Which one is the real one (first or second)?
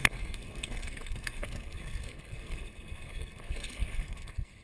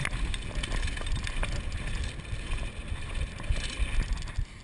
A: second